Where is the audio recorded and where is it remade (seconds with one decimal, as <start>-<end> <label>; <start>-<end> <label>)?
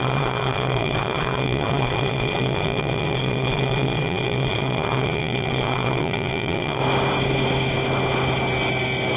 0.0-6.8 remade; 6.8-9.2 recorded